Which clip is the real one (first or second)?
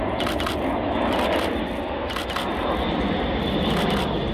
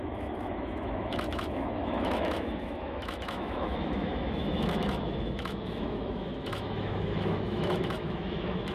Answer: first